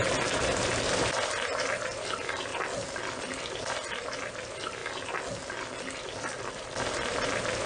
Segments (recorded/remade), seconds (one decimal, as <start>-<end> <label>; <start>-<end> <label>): 0.0-2.5 remade; 2.5-3.2 recorded; 3.2-4.8 remade; 4.8-6.0 recorded; 6.0-7.7 remade